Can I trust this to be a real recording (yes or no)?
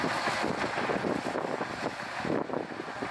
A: yes